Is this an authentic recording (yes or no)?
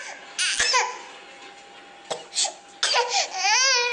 yes